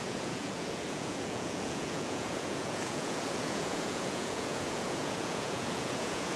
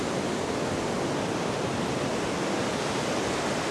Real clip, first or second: second